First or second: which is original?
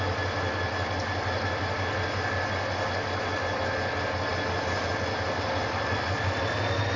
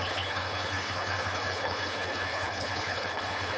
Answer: first